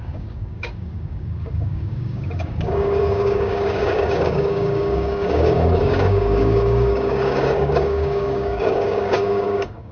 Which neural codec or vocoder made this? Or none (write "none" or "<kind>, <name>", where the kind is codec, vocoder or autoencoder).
codec, DAC